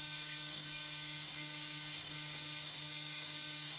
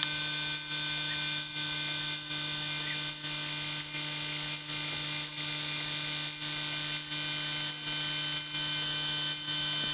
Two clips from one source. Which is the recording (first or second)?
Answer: second